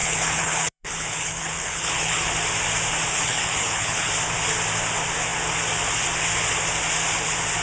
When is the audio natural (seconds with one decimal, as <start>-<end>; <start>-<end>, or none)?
2.3-3.1; 4.1-7.6